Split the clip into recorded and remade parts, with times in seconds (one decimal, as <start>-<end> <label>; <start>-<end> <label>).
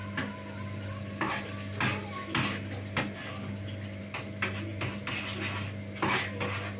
0.0-6.8 recorded